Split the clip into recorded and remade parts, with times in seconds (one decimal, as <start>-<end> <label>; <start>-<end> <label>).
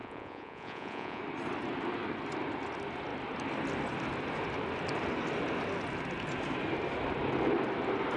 0.0-1.2 remade; 1.2-8.2 recorded